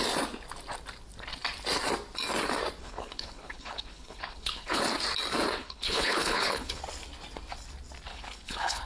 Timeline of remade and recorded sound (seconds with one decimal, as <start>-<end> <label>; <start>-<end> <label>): 0.0-2.8 recorded; 2.8-4.8 remade; 4.8-5.6 recorded; 5.6-6.8 remade; 6.8-8.1 recorded; 8.1-8.9 remade